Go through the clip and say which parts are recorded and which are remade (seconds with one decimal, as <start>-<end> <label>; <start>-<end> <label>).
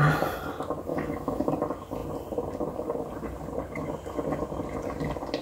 0.0-0.9 recorded; 0.9-1.5 remade; 1.5-5.4 recorded